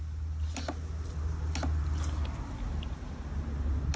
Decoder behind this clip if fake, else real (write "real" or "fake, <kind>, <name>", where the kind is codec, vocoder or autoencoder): real